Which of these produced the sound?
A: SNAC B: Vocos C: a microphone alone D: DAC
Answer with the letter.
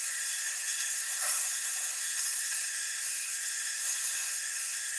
A